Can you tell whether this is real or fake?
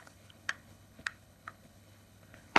fake